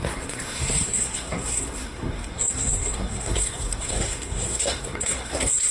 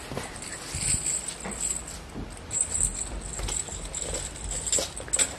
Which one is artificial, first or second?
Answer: first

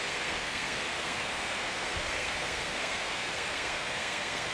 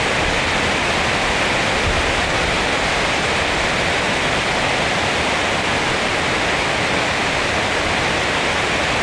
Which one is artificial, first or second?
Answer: first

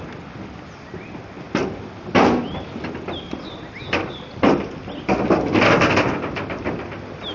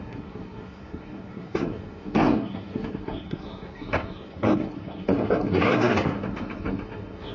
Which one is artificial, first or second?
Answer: second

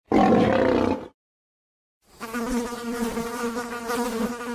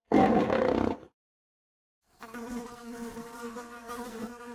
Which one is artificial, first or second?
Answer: second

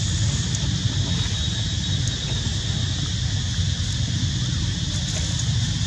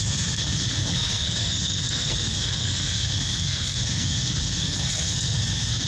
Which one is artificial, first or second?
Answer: second